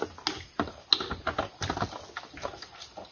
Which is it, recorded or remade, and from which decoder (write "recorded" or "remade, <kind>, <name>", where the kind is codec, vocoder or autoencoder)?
recorded